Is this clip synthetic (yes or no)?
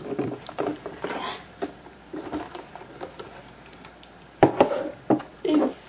yes